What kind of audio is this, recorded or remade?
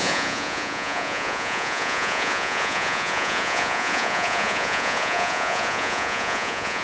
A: remade